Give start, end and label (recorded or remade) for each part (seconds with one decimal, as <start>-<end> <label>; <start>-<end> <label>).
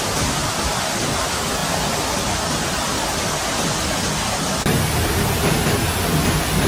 0.0-6.7 recorded